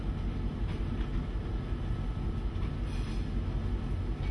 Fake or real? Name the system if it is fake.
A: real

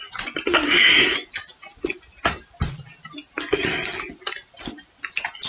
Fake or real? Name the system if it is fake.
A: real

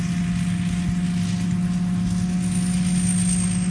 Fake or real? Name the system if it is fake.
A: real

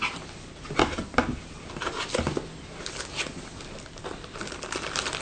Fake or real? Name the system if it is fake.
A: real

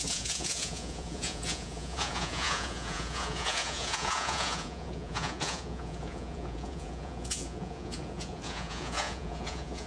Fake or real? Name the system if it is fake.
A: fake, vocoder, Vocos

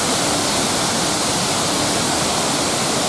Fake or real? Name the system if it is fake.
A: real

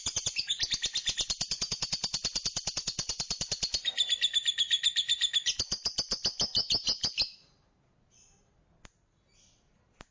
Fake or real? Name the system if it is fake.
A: real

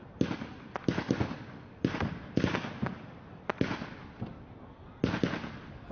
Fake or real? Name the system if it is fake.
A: real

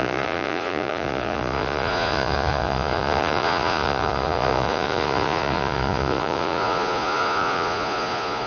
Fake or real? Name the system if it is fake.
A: fake, vocoder, Vocos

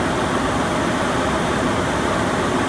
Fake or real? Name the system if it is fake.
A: real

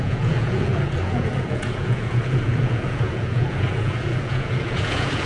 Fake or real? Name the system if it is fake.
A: fake, vocoder, Vocos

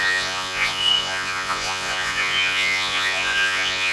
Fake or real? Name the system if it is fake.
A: fake, vocoder, Vocos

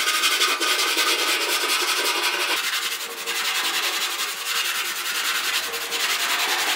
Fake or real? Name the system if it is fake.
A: real